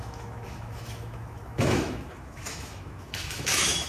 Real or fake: fake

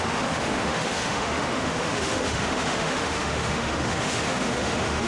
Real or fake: fake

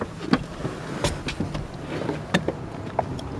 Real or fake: real